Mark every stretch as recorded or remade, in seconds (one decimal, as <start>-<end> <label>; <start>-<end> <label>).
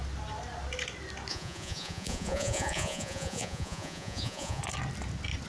0.0-1.3 recorded; 1.3-4.6 remade; 4.6-5.5 recorded